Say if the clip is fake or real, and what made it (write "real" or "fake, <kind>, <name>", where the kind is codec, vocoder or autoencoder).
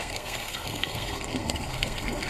fake, codec, SNAC